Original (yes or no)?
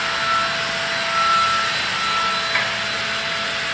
yes